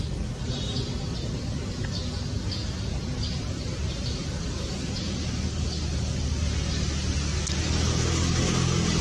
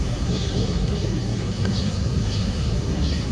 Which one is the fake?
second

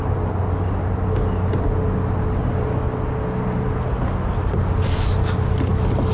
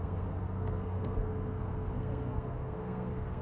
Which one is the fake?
second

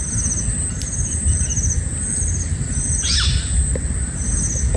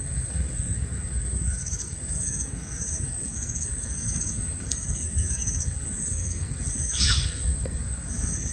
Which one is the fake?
second